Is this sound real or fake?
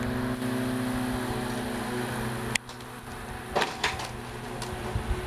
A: real